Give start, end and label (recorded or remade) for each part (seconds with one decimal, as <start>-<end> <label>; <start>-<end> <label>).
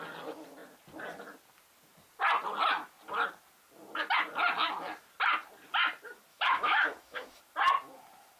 0.0-6.3 recorded; 6.3-7.4 remade; 7.4-8.4 recorded